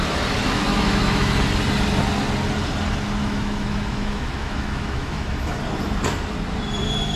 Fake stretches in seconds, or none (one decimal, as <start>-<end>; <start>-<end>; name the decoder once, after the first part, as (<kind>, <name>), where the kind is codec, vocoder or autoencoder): 0.4-1.4 (autoencoder, DAC-VAE); 3.2-5.6